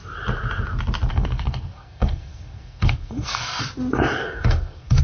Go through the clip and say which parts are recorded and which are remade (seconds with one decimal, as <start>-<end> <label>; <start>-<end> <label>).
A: 0.0-1.1 recorded; 1.1-3.6 remade; 3.6-4.2 recorded; 4.2-5.0 remade